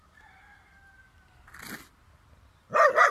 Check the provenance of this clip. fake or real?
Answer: real